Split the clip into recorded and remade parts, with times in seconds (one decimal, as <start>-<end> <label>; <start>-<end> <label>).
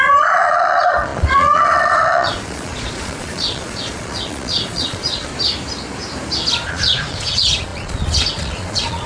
0.0-5.3 remade; 5.3-6.7 recorded; 6.7-9.1 remade